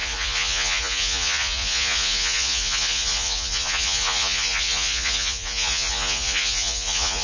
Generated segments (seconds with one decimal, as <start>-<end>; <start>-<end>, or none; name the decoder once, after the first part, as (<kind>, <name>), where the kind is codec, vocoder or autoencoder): 0.0-7.2 (vocoder, Vocos)